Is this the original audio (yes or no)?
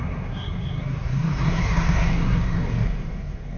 no